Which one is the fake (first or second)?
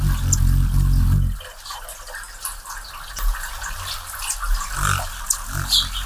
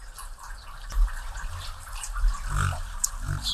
second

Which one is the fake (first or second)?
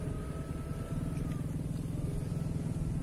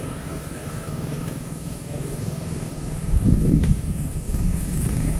second